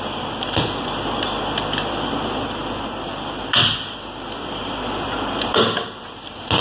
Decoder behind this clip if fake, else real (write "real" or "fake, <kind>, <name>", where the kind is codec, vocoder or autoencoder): real